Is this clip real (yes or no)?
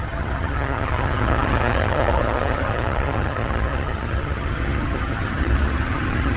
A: no